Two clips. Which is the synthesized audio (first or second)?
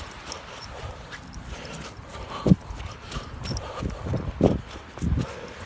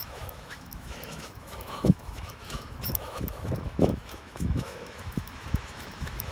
second